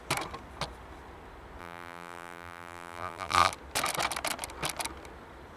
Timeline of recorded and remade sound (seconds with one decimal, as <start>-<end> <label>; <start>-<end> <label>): 0.0-1.6 recorded; 1.6-3.5 remade; 3.5-5.6 recorded

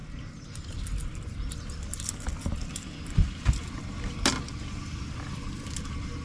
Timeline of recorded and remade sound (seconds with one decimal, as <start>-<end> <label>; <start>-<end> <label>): 0.0-6.2 recorded

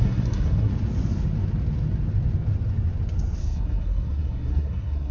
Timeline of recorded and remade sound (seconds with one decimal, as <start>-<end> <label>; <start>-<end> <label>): 0.0-0.7 remade; 0.7-3.4 recorded; 3.4-5.1 remade